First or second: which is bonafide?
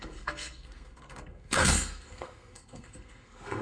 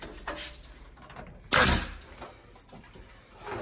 second